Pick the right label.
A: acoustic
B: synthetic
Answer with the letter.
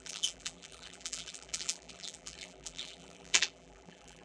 B